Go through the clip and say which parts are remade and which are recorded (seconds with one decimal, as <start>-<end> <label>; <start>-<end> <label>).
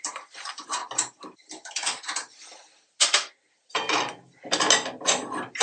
0.0-0.8 remade; 0.8-1.7 recorded; 1.7-2.2 remade; 2.2-5.6 recorded